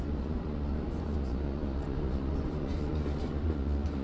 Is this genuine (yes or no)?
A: no